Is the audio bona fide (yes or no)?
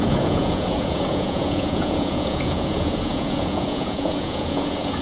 no